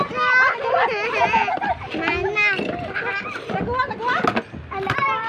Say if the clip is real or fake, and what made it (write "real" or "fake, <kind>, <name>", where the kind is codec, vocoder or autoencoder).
real